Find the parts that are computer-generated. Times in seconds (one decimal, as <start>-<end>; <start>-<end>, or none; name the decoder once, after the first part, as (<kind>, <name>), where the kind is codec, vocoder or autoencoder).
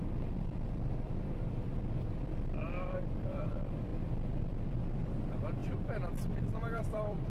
0.0-5.6 (vocoder, BigVGAN v2); 6.4-7.3